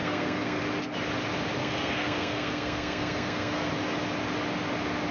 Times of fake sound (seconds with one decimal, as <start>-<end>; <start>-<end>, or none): 0.0-0.6; 1.6-3.7